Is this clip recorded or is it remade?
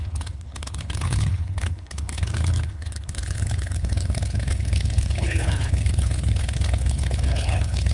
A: remade